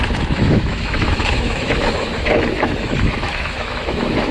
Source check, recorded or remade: remade